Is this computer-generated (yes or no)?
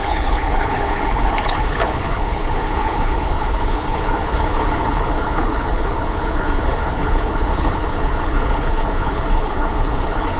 yes